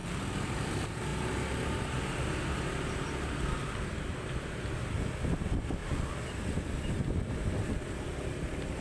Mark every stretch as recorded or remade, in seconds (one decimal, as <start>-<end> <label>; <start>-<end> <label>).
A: 0.0-8.8 recorded